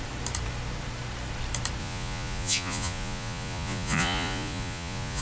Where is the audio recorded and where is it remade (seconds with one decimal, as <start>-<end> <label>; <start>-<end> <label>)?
0.0-1.8 recorded; 1.8-5.2 remade